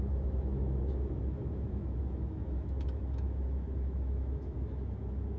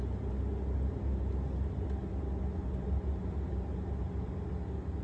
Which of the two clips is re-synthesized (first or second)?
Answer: first